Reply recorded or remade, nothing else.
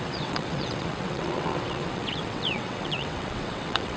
remade